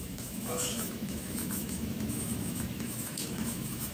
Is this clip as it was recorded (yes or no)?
no